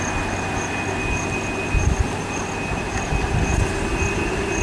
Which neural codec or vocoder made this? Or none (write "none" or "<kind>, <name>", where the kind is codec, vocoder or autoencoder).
none